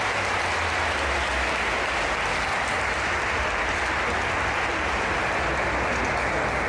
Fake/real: real